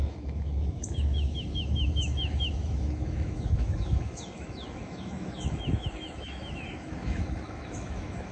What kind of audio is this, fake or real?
fake